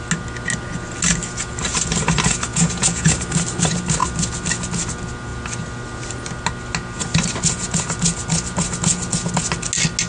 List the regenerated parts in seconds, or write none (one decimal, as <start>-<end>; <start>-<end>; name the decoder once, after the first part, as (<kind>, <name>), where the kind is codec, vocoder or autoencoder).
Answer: 2.5-3.1 (vocoder, Vocos)